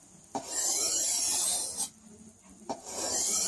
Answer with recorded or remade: recorded